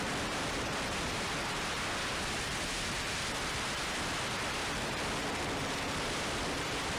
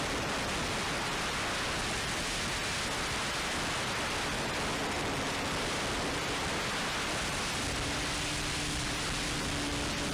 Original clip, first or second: second